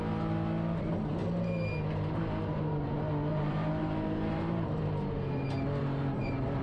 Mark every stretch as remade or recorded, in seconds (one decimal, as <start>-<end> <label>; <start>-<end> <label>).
0.0-3.3 recorded; 3.3-4.9 remade; 4.9-5.8 recorded; 5.8-6.6 remade